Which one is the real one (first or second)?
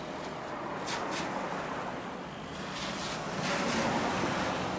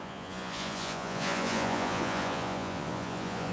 first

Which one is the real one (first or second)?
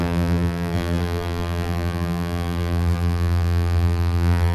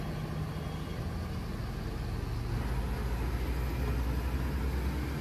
second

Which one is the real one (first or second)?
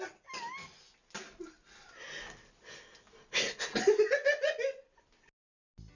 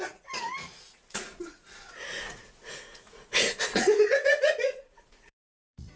first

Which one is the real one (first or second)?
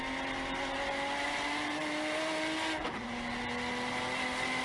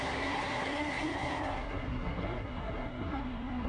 first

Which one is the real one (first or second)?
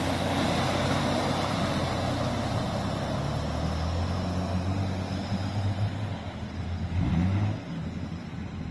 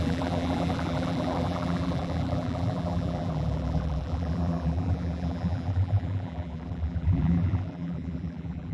first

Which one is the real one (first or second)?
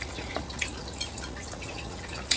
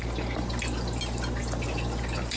second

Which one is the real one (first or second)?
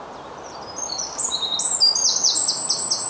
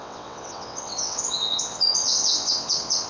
first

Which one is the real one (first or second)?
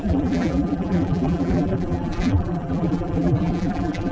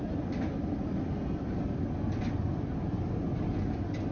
second